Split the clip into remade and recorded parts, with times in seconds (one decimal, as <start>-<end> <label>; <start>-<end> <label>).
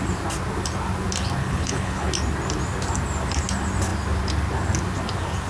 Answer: 0.0-1.4 recorded; 1.4-2.1 remade; 2.1-5.5 recorded